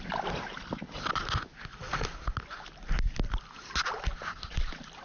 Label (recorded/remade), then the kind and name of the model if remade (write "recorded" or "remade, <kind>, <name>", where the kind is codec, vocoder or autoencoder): recorded